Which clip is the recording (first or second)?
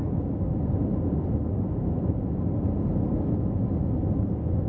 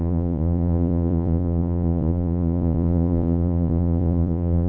first